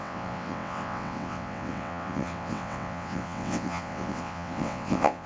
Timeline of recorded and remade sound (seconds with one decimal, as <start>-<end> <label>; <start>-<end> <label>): 0.0-5.3 remade

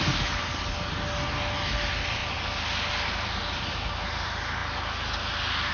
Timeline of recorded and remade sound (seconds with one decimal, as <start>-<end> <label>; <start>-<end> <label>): 0.0-5.7 recorded

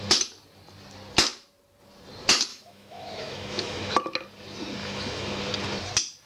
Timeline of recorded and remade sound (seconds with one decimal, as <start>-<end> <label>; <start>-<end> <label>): 0.0-2.5 recorded; 2.5-3.9 remade; 3.9-4.8 recorded; 4.8-5.4 remade; 5.4-6.3 recorded

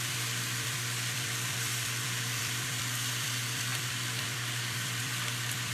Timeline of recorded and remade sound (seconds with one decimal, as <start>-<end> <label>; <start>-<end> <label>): 0.0-5.7 remade

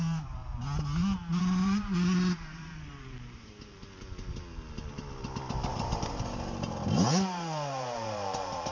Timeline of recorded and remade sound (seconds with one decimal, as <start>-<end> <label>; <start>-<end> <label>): 0.0-0.4 remade; 0.4-1.4 recorded; 1.4-3.8 remade; 3.8-5.7 recorded; 5.7-8.7 remade

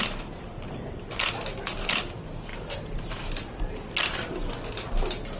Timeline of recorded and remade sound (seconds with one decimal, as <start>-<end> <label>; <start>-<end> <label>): 0.0-5.4 recorded

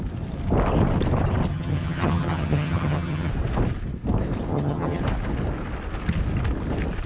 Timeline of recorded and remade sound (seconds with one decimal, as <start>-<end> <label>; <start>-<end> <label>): 0.0-1.5 recorded; 1.5-3.3 remade; 3.3-4.5 recorded; 4.5-5.0 remade; 5.0-7.1 recorded

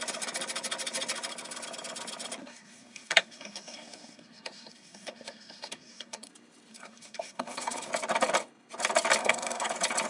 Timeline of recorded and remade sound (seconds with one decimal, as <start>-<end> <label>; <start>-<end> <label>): 0.0-2.4 recorded; 2.4-6.3 remade; 6.3-6.7 recorded; 6.7-7.9 remade; 7.9-9.2 recorded; 9.2-9.7 remade; 9.7-10.1 recorded